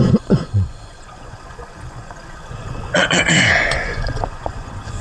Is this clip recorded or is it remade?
remade